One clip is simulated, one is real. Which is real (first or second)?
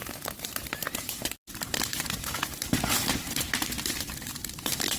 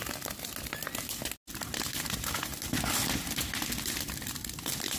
second